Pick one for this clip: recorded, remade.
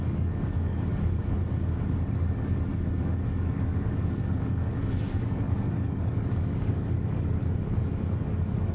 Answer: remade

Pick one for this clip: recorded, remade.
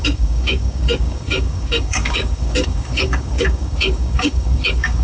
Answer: remade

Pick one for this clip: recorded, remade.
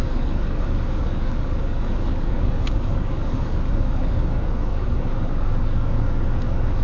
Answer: remade